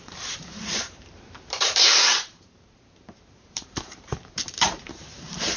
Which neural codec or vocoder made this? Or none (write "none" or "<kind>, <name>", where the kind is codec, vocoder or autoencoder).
vocoder, BigVGAN v2